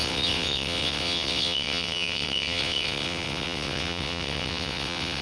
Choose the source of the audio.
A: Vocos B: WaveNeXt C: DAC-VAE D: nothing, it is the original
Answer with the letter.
B